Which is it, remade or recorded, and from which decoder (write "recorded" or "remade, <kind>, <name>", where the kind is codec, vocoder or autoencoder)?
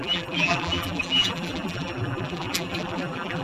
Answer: remade, vocoder, BigVGAN v2